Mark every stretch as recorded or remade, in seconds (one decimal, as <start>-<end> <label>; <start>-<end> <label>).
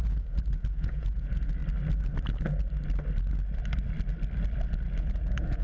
0.0-1.6 remade; 1.6-5.0 recorded; 5.0-5.6 remade